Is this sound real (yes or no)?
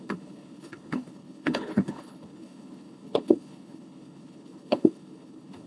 no